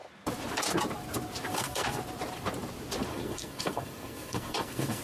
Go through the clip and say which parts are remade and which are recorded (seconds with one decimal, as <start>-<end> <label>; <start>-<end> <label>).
0.0-1.5 recorded; 1.5-2.0 remade; 2.0-3.1 recorded; 3.1-5.0 remade